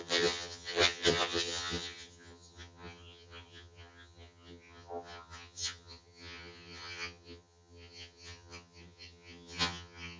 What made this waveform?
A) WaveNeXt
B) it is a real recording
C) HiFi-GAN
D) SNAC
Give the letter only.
C